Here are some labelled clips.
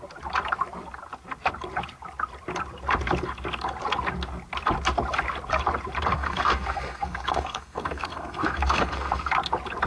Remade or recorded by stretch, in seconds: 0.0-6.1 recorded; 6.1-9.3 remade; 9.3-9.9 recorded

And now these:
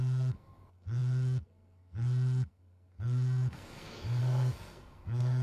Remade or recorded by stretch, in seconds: 0.0-5.4 remade